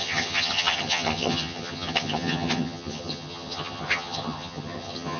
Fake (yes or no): yes